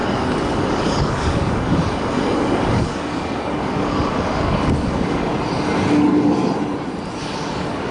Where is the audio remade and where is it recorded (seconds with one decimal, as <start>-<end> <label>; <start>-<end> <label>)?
0.0-5.3 remade; 5.3-5.9 recorded; 5.9-6.4 remade; 6.4-7.2 recorded; 7.2-7.9 remade